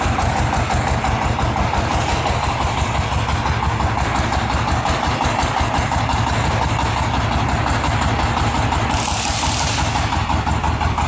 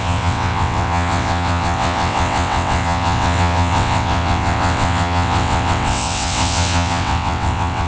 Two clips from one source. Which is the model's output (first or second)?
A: second